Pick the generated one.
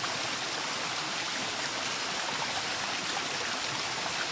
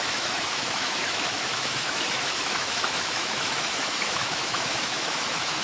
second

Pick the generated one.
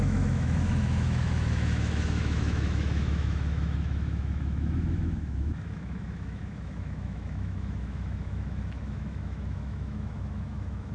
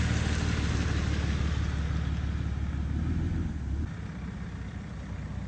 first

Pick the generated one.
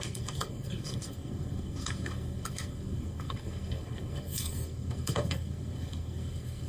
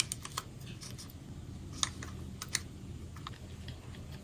first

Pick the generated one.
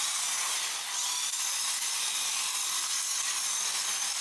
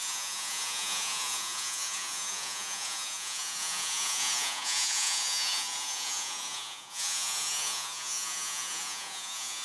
second